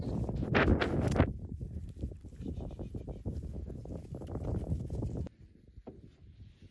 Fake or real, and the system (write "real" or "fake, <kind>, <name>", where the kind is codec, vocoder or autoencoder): real